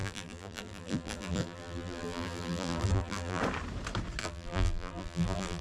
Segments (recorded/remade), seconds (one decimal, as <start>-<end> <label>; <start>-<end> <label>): 0.0-3.4 remade; 3.4-4.2 recorded; 4.2-5.6 remade